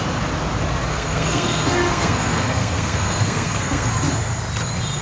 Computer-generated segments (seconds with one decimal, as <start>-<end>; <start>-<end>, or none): 0.9-3.9